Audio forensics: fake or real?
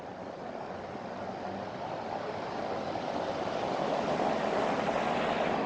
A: real